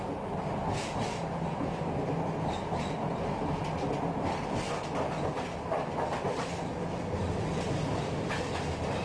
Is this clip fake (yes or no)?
no